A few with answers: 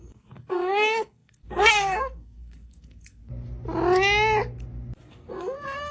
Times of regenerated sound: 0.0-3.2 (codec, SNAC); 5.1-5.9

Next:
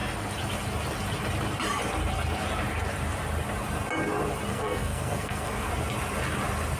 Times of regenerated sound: 4.5-5.7 (codec, SNAC)

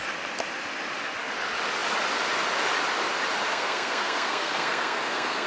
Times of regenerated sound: 3.5-5.5 (codec, SNAC)

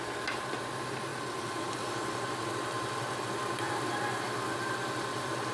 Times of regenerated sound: none

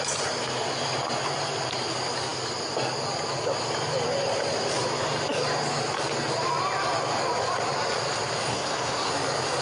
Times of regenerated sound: 8.5-9.1 (codec, SNAC)